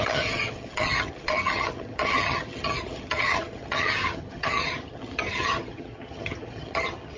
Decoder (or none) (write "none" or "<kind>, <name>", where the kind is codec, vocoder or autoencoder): vocoder, HiFi-GAN